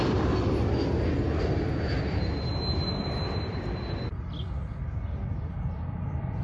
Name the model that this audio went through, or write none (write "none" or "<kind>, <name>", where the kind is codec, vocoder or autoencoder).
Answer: none